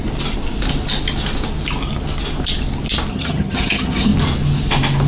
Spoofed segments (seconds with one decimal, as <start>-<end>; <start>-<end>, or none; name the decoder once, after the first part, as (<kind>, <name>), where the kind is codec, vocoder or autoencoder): 3.1-4.1 (vocoder, HiFi-GAN)